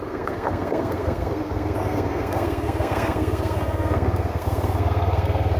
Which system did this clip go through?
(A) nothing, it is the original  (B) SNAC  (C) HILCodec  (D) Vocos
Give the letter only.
B